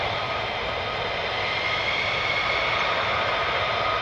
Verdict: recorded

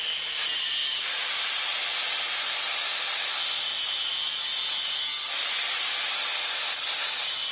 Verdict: recorded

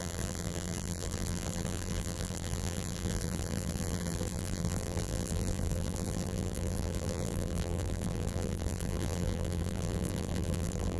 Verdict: remade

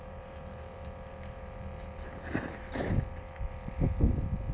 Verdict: remade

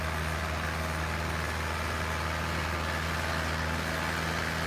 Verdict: recorded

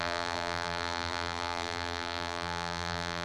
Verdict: remade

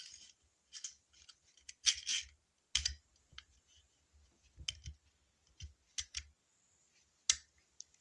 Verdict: recorded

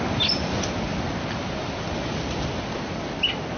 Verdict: recorded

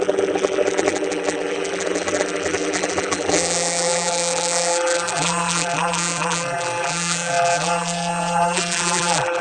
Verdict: remade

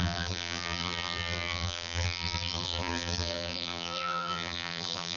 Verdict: remade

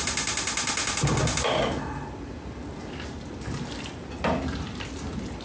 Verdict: recorded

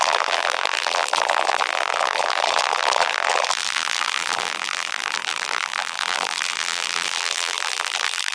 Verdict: remade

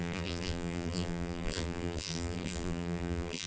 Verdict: remade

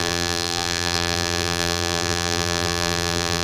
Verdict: remade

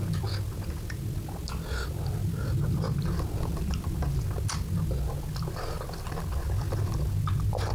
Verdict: recorded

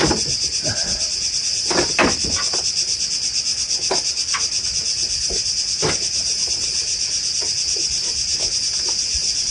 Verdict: recorded